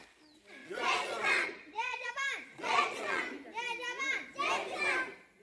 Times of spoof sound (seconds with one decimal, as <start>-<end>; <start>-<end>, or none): 0.6-2.1; 2.5-3.2